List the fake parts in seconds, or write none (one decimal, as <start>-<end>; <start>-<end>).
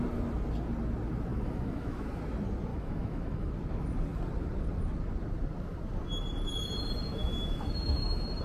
1.3-2.2; 2.7-3.5; 7.1-8.4